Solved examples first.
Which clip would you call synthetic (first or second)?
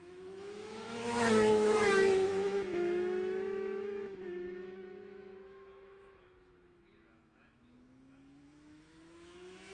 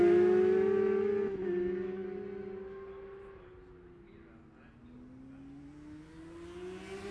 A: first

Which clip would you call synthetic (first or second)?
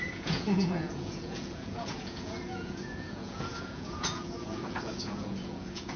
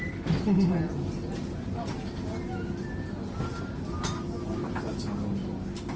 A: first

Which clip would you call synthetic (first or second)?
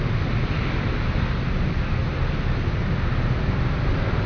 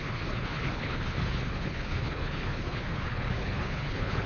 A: second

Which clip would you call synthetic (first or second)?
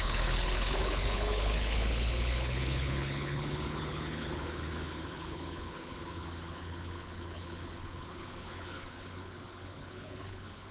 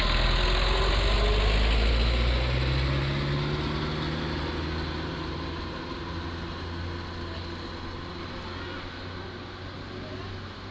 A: first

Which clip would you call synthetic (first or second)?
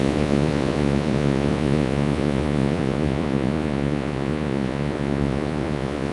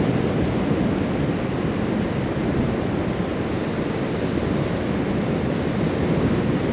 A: first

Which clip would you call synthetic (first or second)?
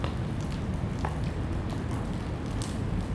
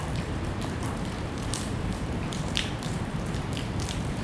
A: second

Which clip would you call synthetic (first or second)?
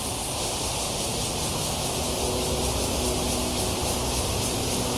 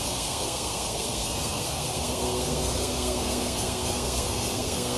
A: second